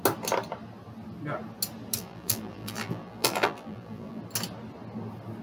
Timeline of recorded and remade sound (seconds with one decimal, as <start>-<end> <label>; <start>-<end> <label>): 0.0-2.0 recorded; 2.0-4.2 remade; 4.2-5.4 recorded